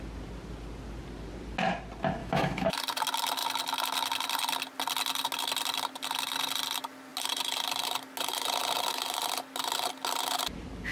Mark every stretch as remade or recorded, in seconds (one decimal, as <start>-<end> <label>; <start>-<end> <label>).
0.0-2.2 recorded; 2.2-2.8 remade; 2.8-10.9 recorded